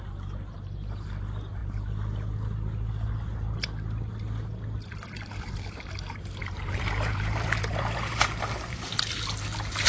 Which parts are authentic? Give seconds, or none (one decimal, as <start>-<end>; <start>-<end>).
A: 0.0-6.4; 8.9-9.9